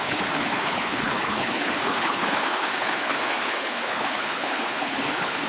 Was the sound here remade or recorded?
remade